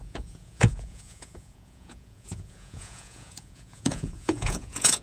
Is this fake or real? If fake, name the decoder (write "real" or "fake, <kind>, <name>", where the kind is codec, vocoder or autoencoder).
fake, vocoder, Vocos